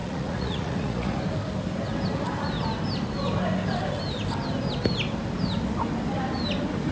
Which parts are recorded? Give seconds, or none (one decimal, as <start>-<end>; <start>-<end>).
1.2-6.9